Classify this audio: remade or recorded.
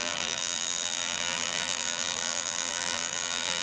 remade